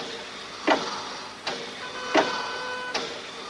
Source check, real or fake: real